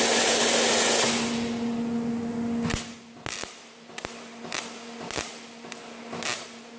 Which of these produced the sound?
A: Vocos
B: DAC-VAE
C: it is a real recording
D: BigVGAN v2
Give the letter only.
C